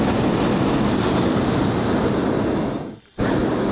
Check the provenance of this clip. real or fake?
real